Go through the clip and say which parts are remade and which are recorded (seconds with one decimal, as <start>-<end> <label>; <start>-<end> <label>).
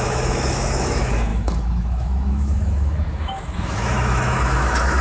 0.0-5.0 remade